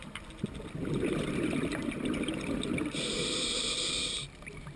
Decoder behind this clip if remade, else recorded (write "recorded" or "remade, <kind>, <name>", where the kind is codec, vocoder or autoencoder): recorded